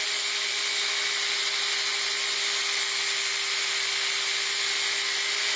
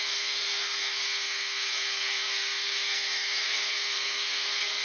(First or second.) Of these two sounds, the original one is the first